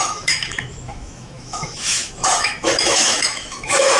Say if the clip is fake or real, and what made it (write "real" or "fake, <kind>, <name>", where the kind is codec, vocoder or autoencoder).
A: fake, autoencoder, DAC-VAE